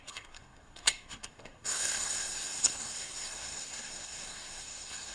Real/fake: fake